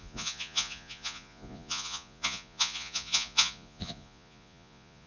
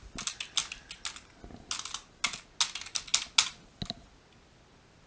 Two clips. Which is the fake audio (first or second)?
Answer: first